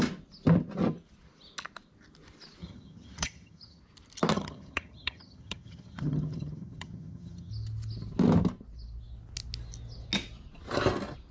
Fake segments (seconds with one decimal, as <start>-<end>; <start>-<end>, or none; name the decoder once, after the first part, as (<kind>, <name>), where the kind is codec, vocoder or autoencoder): 2.6-3.8 (vocoder, HiFi-GAN); 4.3-7.5